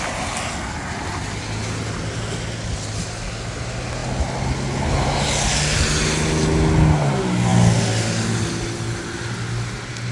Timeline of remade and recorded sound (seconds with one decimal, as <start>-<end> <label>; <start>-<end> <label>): 0.0-10.1 recorded